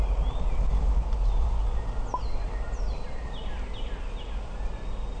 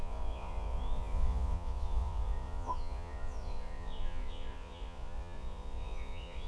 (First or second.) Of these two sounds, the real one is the first